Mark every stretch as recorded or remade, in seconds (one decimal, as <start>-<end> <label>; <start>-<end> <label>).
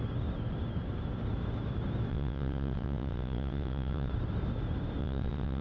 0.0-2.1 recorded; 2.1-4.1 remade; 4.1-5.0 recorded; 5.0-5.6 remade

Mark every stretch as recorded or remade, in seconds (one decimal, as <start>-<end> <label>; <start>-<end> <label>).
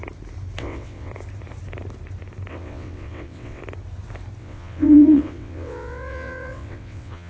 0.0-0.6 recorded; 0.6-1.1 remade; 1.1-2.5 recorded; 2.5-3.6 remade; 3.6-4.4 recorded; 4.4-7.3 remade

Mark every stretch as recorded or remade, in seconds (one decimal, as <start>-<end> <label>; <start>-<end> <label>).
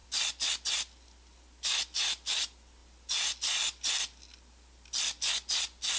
0.0-6.0 recorded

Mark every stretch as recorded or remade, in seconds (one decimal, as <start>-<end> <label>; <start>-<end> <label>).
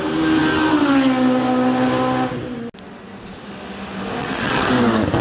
0.0-4.2 recorded; 4.2-4.7 remade; 4.7-5.2 recorded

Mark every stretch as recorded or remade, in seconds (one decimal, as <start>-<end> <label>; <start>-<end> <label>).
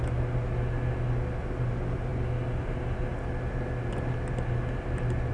0.0-5.3 recorded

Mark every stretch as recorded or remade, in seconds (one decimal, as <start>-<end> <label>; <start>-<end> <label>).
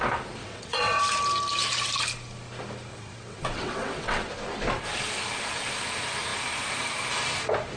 0.0-0.4 recorded; 0.4-1.0 remade; 1.0-2.9 recorded; 2.9-4.3 remade; 4.3-7.8 recorded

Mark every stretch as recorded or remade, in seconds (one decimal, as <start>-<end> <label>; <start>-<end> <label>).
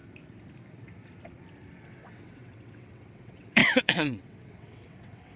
0.0-1.8 recorded; 1.8-5.4 remade